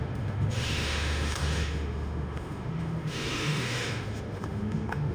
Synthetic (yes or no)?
yes